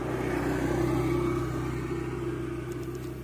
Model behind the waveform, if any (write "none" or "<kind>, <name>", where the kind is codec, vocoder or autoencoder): none